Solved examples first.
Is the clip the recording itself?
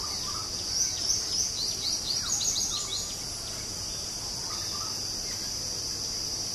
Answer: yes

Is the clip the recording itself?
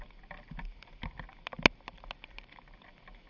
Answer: yes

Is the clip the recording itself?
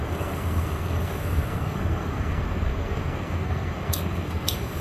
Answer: no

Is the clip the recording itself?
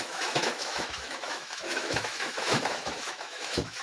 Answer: no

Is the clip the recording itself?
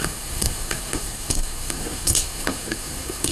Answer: no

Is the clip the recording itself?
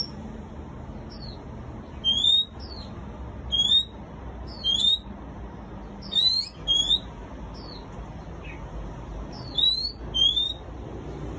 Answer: yes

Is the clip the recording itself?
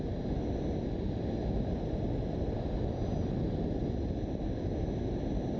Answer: yes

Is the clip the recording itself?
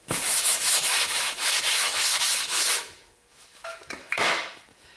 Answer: no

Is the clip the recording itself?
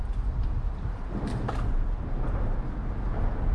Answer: yes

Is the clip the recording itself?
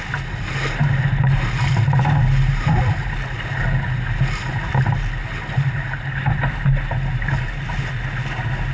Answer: yes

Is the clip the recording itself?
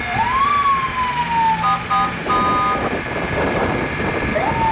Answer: yes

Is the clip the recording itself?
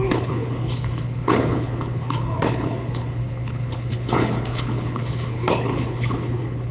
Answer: no